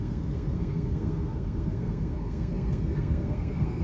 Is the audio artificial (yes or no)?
yes